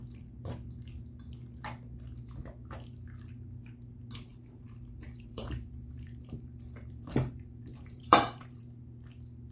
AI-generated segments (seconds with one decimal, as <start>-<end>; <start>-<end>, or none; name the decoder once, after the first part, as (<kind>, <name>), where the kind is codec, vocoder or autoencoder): 4.3-8.6 (vocoder, BigVGAN v2)